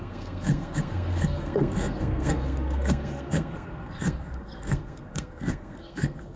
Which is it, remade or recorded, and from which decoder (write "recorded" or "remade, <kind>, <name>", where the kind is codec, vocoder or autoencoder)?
remade, codec, SNAC